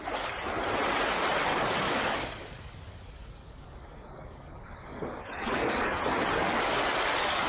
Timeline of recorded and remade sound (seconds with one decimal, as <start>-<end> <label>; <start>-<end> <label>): 0.0-1.5 recorded; 1.5-6.0 remade; 6.0-7.5 recorded